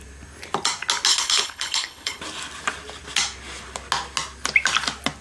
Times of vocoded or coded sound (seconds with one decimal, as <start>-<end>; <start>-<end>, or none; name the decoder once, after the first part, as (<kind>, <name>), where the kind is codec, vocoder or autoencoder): 1.1-2.2 (codec, HILCodec)

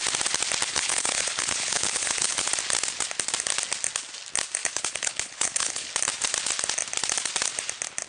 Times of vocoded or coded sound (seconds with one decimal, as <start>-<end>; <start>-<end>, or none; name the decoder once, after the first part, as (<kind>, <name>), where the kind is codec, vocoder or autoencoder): 0.7-2.5 (codec, HILCodec); 4.6-5.9

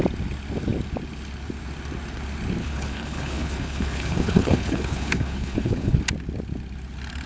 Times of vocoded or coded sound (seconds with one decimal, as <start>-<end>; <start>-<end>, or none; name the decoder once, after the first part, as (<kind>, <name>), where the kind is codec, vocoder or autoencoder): 2.6-6.0 (codec, HILCodec)

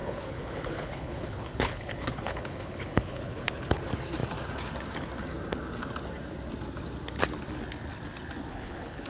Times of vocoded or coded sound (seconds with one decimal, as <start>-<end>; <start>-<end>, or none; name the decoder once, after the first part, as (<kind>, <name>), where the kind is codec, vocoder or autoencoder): 0.0-3.8 (codec, HILCodec); 8.5-9.1